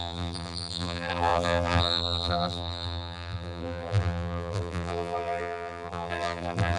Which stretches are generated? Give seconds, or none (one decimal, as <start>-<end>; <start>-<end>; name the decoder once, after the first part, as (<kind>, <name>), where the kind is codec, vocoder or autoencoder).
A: 0.0-6.8 (vocoder, BigVGAN v2)